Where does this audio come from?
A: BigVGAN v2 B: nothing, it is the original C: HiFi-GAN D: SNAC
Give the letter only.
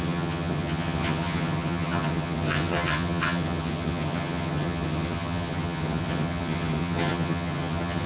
C